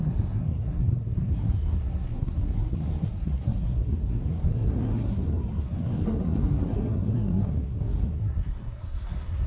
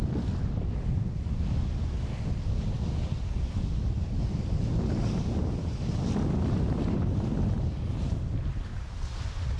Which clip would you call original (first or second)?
second